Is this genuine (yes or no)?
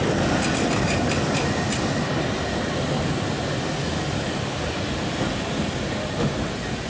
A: yes